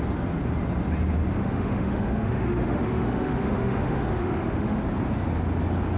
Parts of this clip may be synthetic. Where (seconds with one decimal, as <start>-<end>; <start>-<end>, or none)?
1.4-4.8